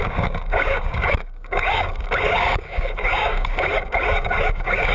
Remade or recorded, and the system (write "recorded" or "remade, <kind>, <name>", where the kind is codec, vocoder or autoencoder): remade, codec, DAC